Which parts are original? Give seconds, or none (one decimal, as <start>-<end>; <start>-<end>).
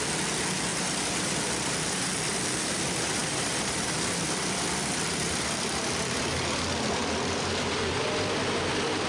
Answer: 0.0-0.7; 1.7-3.2; 6.2-9.1